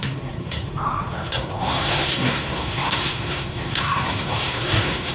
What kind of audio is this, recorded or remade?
remade